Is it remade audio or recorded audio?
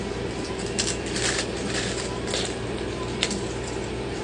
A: remade